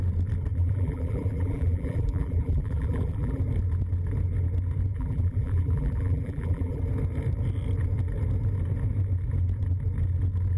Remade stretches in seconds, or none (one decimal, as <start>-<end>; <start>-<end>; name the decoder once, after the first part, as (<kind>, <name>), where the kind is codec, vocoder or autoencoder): 0.5-3.4 (vocoder, BigVGAN v2); 4.9-6.8